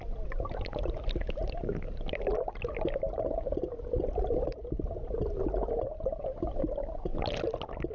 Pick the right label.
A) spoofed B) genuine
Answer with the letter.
B